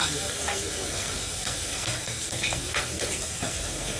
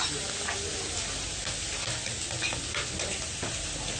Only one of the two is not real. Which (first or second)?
first